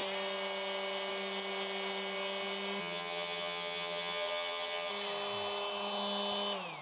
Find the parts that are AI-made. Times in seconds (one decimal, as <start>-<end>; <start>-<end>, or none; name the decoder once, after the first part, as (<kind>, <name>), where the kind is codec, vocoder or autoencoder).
2.8-4.9 (vocoder, HiFi-GAN)